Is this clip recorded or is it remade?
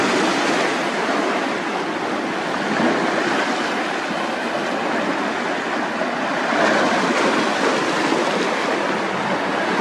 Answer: recorded